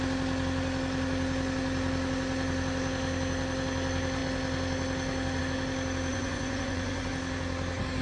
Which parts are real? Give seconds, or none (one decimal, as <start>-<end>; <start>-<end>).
0.0-6.1; 7.1-8.0